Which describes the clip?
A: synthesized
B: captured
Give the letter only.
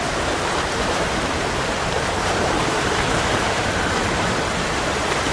A